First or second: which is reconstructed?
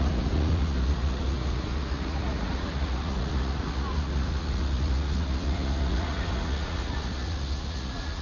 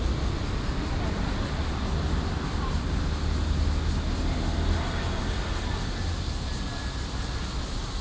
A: first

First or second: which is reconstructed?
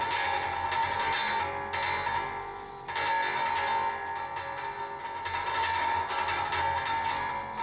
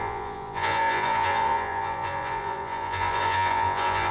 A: second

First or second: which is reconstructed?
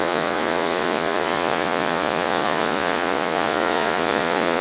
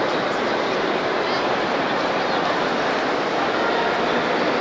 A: first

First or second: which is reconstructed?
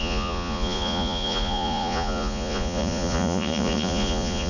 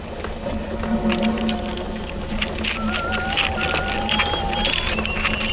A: first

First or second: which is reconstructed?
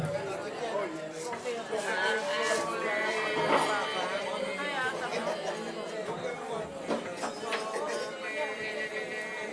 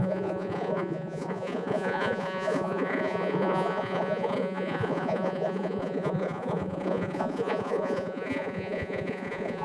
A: second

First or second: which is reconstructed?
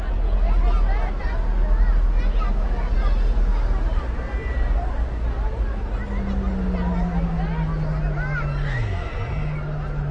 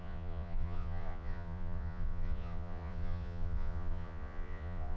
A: second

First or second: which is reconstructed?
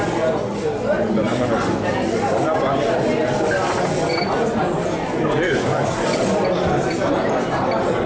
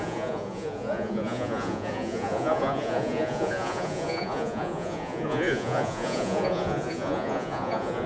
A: second